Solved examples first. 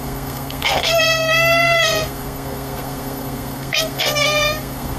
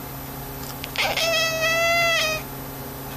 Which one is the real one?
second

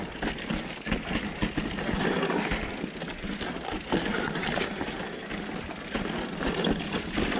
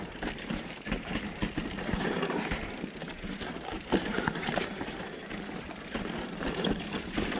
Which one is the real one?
first